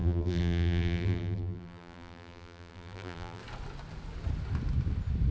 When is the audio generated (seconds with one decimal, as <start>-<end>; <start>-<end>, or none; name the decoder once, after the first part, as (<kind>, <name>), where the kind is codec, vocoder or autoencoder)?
0.0-3.4 (vocoder, BigVGAN v2)